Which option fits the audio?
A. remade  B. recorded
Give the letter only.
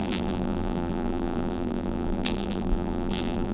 A